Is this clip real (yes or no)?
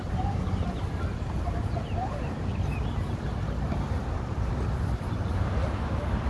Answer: yes